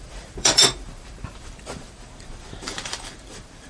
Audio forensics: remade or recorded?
remade